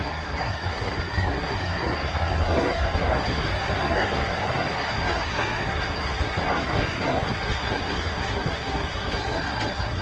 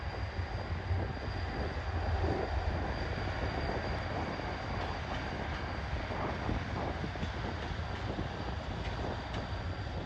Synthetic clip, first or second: first